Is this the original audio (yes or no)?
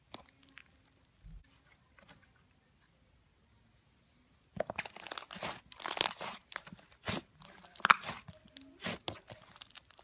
yes